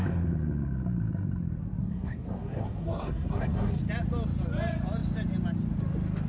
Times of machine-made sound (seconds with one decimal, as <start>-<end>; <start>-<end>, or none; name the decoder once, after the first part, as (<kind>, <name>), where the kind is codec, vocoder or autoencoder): 1.8-3.8 (codec, SNAC)